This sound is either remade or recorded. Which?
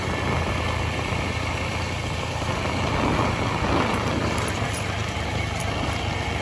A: recorded